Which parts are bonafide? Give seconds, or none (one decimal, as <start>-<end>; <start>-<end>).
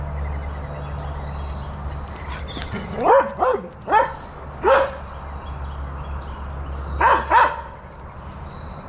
0.0-8.9